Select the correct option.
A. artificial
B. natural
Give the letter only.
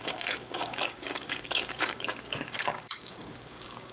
A